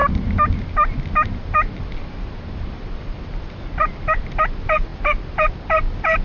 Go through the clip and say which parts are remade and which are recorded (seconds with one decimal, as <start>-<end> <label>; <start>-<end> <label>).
0.0-6.2 recorded